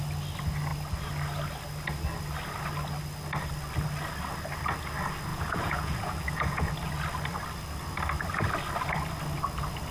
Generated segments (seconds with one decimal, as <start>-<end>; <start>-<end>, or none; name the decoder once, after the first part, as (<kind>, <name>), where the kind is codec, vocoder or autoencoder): 5.3-6.7 (vocoder, Vocos)

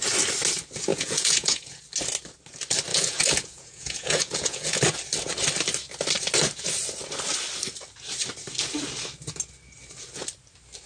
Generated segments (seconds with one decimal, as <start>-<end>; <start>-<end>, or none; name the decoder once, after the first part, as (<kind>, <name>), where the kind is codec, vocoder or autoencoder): 0.9-1.8 (vocoder, Vocos); 2.9-4.8

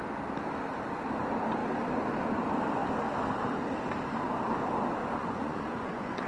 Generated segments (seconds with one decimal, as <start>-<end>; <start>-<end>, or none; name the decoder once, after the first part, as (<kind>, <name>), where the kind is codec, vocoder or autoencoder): 5.0-6.3 (vocoder, Vocos)

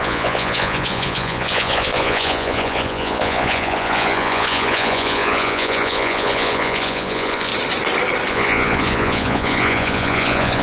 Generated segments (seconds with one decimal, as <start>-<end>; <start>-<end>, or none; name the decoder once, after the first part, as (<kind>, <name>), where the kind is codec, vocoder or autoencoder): 0.0-7.5 (vocoder, Vocos); 8.3-10.6

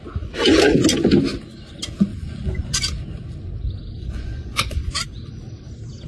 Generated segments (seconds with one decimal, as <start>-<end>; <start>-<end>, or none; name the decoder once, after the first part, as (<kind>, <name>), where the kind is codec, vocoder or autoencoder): 2.1-2.8 (vocoder, Vocos); 4.0-4.9

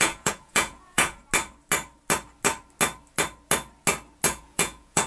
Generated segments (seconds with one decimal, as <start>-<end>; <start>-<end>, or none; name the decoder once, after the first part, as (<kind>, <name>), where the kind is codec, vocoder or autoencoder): 0.0-1.2 (vocoder, Vocos); 4.3-5.1